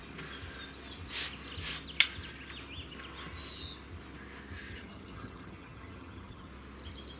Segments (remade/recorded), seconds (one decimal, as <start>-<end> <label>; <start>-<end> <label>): 0.0-4.7 recorded; 4.7-6.5 remade; 6.5-7.2 recorded